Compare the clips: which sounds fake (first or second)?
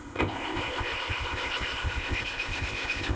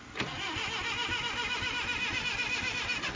first